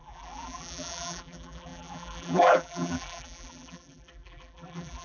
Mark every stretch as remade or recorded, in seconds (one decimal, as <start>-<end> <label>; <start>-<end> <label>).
0.0-5.0 remade